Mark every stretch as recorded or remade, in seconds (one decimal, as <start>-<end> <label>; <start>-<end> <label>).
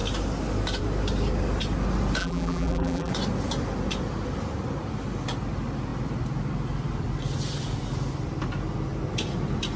0.0-2.2 recorded; 2.2-3.1 remade; 3.1-9.8 recorded